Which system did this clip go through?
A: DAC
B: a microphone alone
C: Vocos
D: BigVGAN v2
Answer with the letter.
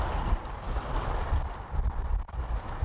B